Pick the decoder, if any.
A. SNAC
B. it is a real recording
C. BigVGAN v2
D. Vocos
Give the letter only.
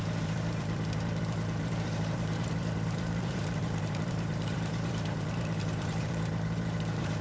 C